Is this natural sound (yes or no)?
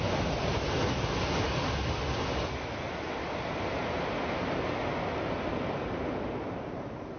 yes